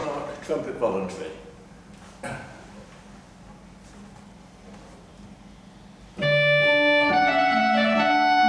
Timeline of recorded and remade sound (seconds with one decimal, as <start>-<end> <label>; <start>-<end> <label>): 0.0-0.7 remade; 0.7-8.5 recorded